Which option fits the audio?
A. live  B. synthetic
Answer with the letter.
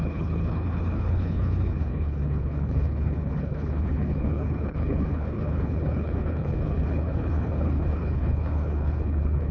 B